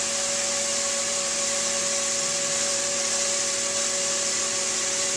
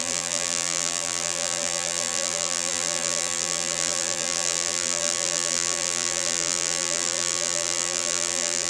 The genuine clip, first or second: first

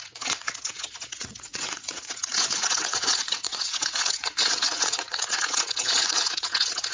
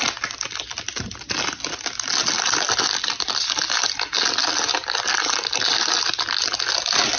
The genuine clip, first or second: second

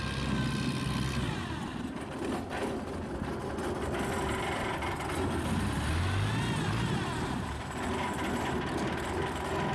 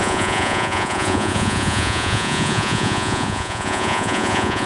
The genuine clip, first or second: first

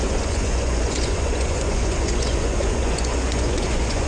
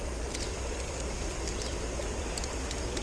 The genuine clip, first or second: second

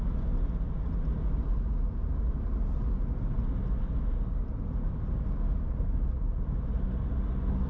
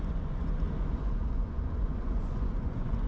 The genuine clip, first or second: first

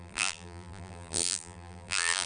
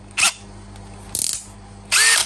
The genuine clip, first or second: second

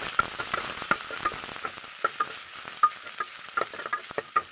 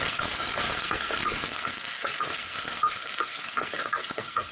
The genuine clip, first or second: first